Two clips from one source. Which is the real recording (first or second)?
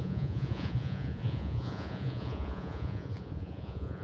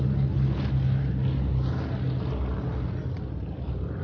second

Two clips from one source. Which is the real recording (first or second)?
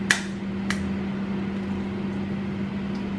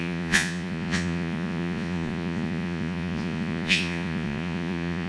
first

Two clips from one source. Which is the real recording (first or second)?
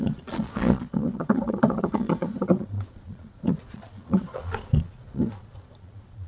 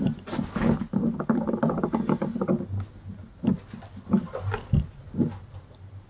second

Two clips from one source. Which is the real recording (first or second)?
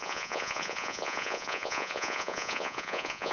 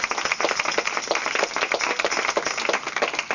second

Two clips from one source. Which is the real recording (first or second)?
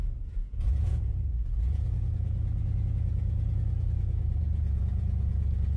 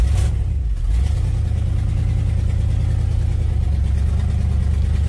second